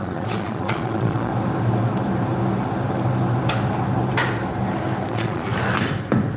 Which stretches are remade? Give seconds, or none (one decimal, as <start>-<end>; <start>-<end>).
0.0-1.3; 5.1-5.5

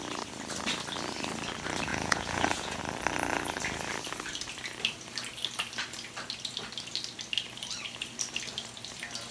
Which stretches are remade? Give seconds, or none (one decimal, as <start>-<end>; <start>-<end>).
1.9-2.8

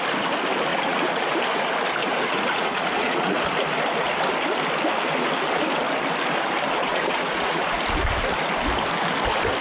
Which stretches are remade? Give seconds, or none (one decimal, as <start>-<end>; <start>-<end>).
0.7-1.3; 2.0-3.4; 6.9-7.8

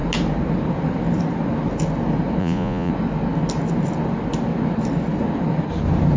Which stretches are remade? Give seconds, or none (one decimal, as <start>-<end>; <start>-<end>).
2.4-2.9

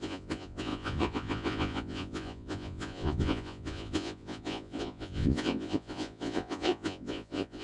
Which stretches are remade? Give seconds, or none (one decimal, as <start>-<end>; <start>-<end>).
0.0-7.6

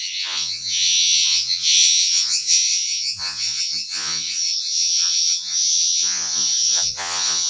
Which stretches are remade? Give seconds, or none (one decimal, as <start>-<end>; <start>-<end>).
0.0-7.5

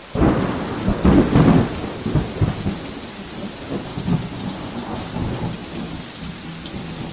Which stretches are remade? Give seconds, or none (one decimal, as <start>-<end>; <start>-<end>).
3.9-5.0

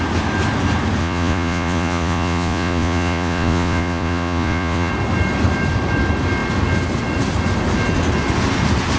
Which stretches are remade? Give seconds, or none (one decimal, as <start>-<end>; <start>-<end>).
1.0-4.9